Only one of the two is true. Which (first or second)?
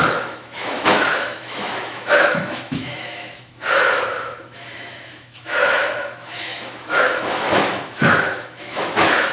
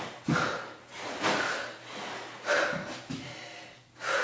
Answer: second